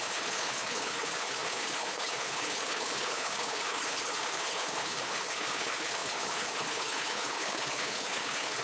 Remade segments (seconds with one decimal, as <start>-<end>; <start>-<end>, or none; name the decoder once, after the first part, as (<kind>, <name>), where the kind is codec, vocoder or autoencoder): 0.0-8.6 (codec, HILCodec)